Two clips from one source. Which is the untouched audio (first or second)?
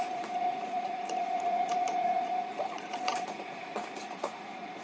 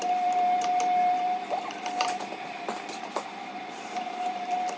second